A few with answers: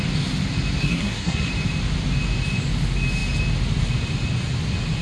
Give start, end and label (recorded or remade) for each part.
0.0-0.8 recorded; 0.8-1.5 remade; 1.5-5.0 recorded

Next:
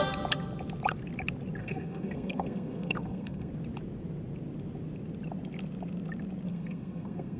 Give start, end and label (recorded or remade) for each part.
0.0-1.6 recorded; 1.6-3.5 remade; 3.5-6.5 recorded; 6.5-7.4 remade

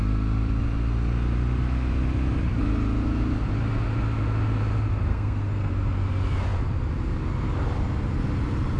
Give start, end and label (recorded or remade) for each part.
0.0-5.1 recorded; 5.1-5.7 remade; 5.7-8.8 recorded

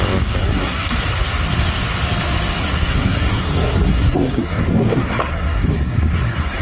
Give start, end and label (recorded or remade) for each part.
0.0-0.4 recorded; 0.4-0.9 remade; 0.9-2.6 recorded; 2.6-6.6 remade

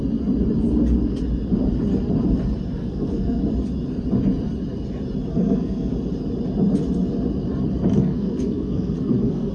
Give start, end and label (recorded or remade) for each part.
0.0-2.8 recorded; 2.8-3.4 remade; 3.4-5.3 recorded; 5.3-5.9 remade; 5.9-8.0 recorded; 8.0-9.5 remade

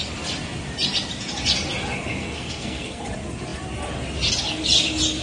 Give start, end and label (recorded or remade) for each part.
0.0-2.1 recorded; 2.1-3.0 remade; 3.0-5.2 recorded